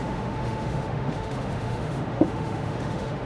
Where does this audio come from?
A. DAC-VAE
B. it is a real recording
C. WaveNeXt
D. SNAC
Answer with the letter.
A